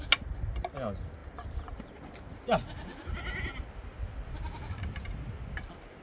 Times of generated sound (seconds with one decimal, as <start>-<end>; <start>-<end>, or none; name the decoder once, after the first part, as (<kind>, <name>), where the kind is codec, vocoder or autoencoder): none